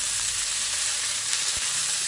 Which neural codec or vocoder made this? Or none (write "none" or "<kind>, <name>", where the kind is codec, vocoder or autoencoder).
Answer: vocoder, BigVGAN v2